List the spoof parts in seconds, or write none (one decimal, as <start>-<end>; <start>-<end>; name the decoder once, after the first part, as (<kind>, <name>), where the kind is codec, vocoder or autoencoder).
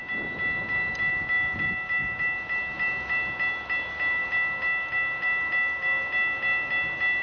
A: none